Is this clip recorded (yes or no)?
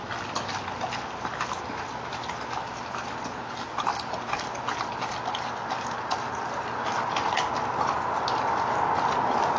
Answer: yes